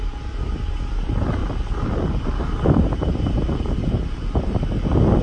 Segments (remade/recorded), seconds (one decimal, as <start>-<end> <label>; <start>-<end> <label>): 0.0-5.2 recorded